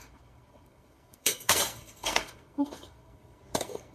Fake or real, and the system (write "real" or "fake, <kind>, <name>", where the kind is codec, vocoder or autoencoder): fake, codec, SNAC